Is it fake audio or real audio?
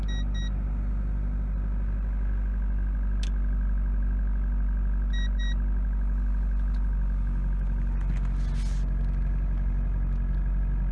real